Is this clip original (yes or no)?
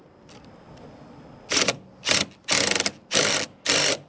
yes